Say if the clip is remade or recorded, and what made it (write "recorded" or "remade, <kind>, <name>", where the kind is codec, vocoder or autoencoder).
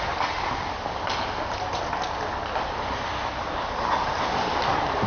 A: recorded